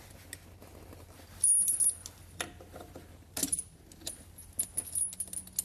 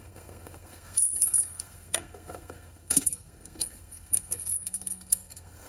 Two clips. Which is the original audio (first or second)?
first